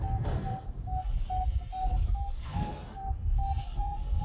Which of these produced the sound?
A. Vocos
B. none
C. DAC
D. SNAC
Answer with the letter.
D